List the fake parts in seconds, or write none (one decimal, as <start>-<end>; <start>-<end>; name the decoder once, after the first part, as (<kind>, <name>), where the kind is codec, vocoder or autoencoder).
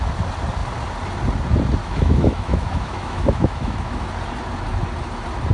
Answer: 1.8-4.1 (autoencoder, DAC-VAE)